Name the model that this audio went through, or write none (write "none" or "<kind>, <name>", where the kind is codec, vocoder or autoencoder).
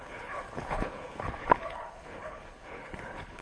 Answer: codec, HILCodec